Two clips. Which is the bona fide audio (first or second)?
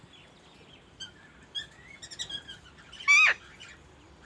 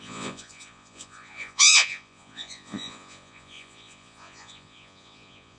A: first